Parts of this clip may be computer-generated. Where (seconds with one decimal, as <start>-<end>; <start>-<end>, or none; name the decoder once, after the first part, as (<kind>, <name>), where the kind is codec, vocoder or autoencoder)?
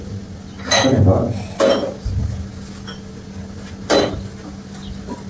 none